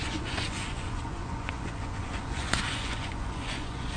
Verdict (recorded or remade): remade